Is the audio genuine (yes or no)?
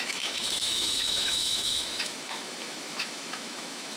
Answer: no